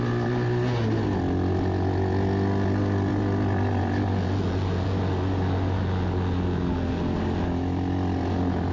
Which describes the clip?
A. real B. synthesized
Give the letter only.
A